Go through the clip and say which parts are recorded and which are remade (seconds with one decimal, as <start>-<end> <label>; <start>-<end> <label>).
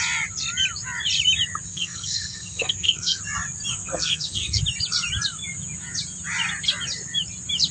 0.0-1.7 recorded; 1.7-3.2 remade; 3.2-3.7 recorded; 3.7-4.6 remade; 4.6-7.7 recorded